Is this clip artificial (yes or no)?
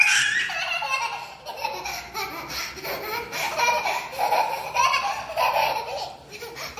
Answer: no